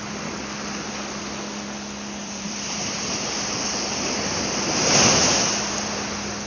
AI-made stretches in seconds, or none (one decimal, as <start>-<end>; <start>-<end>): 2.2-3.5